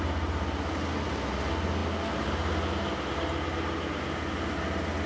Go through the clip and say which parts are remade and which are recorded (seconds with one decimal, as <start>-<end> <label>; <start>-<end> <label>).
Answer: 0.0-5.1 recorded